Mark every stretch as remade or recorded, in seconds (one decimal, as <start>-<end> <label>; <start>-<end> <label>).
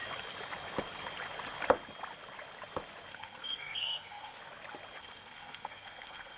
0.0-3.1 recorded; 3.1-4.4 remade; 4.4-5.0 recorded; 5.0-6.4 remade